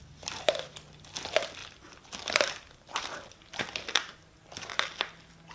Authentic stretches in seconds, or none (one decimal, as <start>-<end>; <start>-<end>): 0.0-5.5